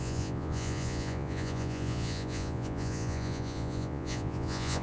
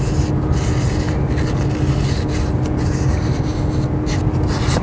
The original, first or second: second